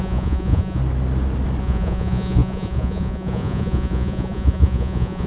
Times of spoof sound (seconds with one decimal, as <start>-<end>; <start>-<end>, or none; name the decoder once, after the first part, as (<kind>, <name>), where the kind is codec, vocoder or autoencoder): 0.0-0.8 (vocoder, Vocos); 1.6-5.3